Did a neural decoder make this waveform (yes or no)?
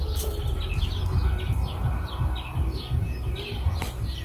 no